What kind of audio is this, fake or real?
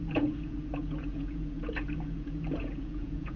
fake